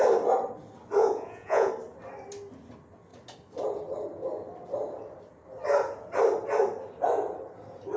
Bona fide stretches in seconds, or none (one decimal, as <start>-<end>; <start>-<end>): 0.0-1.0; 1.7-8.0